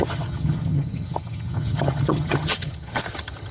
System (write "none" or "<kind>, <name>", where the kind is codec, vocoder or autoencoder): vocoder, HiFi-GAN